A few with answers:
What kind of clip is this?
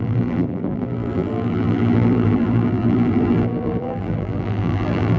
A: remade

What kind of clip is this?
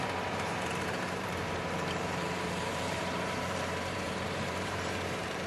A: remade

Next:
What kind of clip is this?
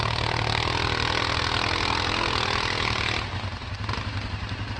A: recorded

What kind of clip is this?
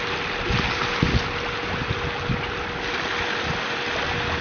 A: recorded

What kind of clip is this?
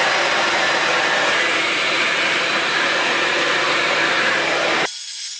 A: remade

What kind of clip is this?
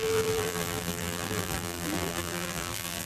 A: remade